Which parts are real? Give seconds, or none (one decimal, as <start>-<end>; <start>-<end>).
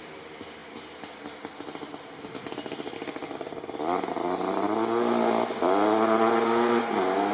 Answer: 0.0-7.3